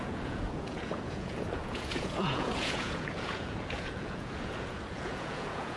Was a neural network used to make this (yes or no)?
yes